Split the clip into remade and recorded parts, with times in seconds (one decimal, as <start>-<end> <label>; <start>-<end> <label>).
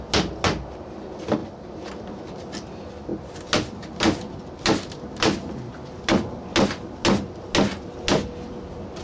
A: 0.0-1.4 recorded; 1.4-1.9 remade; 1.9-9.0 recorded